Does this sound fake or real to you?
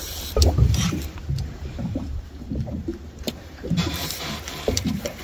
fake